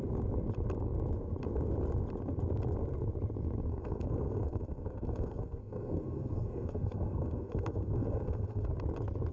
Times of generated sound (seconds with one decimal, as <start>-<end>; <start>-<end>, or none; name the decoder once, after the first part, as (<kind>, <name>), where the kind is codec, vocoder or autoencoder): 3.7-8.7 (codec, SNAC)